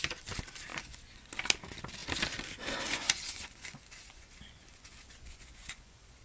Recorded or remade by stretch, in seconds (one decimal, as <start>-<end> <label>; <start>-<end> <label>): 0.0-0.7 recorded; 0.7-1.3 remade; 1.3-2.9 recorded; 2.9-6.2 remade